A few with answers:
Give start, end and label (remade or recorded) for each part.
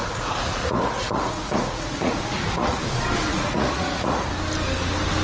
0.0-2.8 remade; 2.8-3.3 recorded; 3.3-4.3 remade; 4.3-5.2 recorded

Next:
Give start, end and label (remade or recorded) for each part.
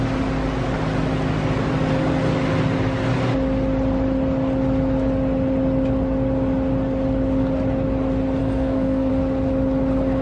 0.0-8.4 recorded; 8.4-9.1 remade; 9.1-10.2 recorded